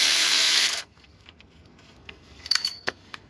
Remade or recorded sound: remade